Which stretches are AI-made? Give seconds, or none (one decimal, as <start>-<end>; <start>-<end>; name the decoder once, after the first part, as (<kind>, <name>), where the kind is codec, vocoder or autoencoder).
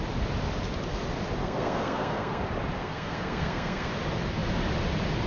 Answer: 1.4-2.4 (codec, SNAC); 2.8-3.9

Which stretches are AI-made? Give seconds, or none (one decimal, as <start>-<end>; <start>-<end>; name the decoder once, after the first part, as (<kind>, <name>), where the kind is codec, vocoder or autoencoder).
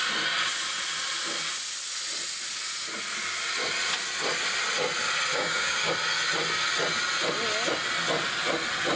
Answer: 5.3-5.9 (codec, DAC)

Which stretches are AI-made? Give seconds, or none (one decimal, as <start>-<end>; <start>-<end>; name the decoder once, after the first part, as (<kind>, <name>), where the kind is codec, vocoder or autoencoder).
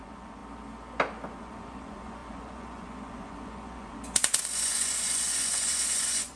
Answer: 0.0-0.4 (vocoder, Vocos); 1.4-6.4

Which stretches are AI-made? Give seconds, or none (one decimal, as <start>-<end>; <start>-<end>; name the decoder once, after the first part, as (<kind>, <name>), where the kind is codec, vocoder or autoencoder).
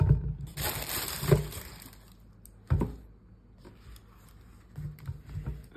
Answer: none